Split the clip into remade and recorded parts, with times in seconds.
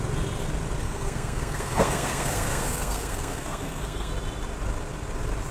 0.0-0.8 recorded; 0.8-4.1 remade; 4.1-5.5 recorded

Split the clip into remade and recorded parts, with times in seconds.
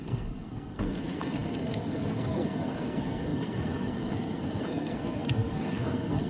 0.0-6.3 remade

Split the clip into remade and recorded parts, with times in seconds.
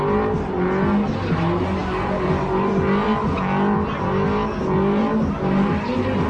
0.0-6.3 recorded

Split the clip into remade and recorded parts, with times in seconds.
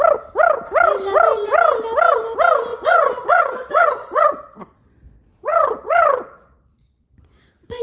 0.0-2.7 recorded; 2.7-7.8 remade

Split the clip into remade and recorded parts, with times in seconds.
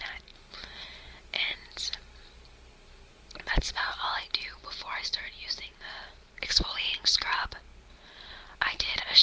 0.0-9.2 recorded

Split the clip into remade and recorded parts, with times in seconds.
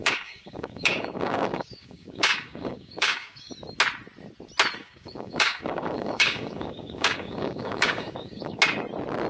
0.0-3.5 remade; 3.5-4.8 recorded; 4.8-8.6 remade; 8.6-9.3 recorded